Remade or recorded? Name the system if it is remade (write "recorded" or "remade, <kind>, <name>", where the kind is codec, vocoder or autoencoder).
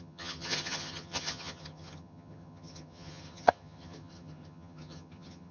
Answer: remade, vocoder, HiFi-GAN